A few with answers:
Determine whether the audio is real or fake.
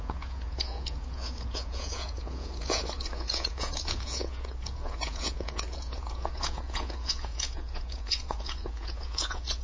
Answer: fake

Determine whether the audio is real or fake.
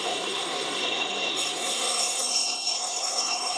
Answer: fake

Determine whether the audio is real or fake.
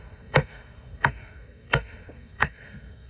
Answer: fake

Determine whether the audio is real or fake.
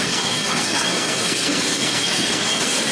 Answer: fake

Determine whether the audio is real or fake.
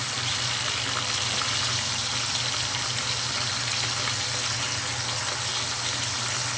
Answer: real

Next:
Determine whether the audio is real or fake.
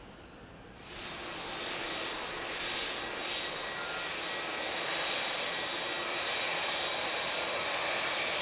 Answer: real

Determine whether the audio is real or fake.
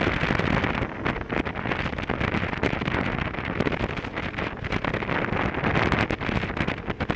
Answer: real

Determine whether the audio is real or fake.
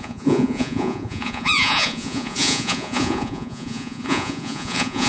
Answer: fake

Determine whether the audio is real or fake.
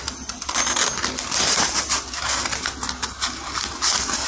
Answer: real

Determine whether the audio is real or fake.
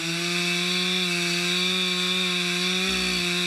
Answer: real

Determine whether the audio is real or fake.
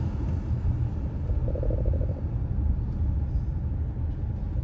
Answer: real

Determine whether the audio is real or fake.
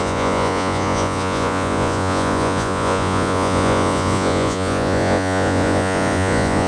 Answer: fake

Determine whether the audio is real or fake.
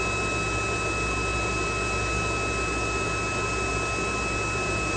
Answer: real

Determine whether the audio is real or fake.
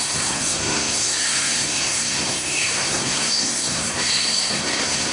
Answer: fake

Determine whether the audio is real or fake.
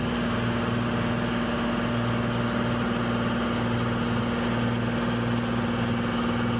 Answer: real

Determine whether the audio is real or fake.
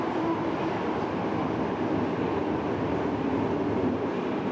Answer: real